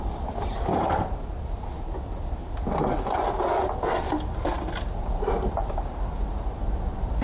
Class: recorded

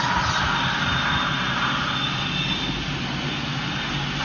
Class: recorded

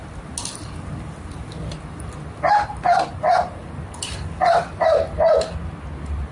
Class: recorded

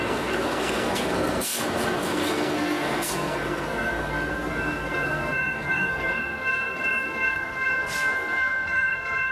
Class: remade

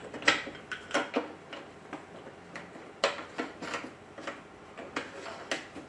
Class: recorded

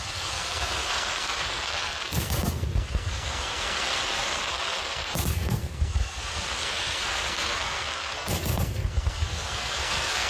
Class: remade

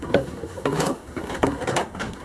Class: remade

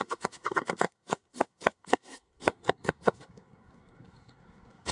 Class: remade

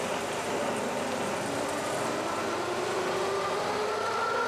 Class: recorded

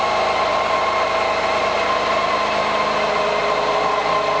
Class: recorded